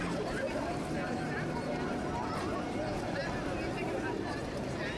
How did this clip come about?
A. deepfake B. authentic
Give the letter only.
B